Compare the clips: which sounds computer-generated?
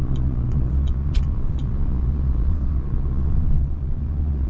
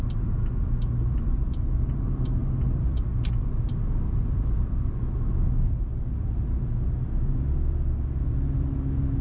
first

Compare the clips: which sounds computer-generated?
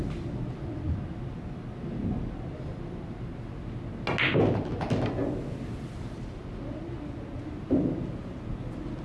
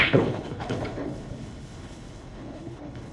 second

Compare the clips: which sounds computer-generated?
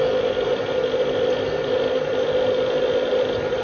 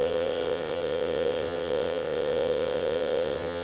second